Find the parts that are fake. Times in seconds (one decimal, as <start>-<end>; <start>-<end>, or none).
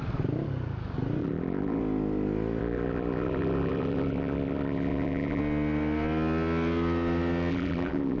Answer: 1.2-1.8; 2.6-5.4; 7.5-8.2